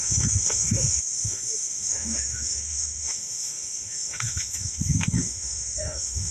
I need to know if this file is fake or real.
fake